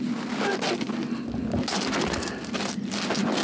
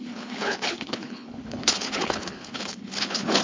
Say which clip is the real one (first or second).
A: first